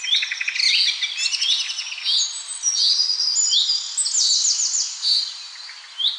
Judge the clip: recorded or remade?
recorded